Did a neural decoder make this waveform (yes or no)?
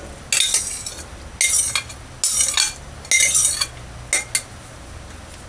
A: no